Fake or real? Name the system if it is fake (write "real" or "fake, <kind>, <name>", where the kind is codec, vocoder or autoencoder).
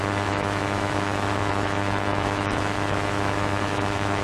fake, autoencoder, DAC-VAE